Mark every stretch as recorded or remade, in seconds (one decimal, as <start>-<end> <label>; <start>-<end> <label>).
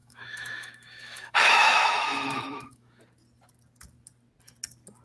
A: 0.0-3.0 remade; 3.0-5.0 recorded